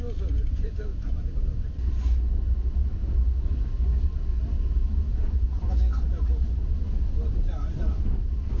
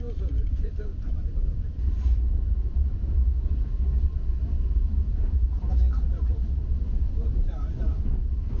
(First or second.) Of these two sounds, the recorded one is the first